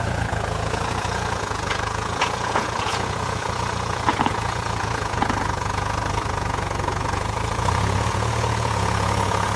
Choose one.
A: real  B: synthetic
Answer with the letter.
B